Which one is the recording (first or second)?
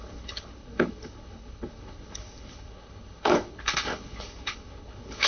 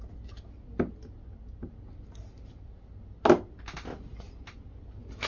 second